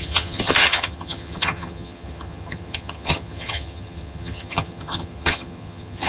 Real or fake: fake